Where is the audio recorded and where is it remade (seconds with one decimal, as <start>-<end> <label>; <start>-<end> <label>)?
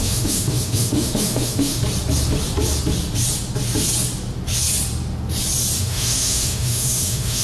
0.0-1.8 remade; 1.8-5.8 recorded; 5.8-7.4 remade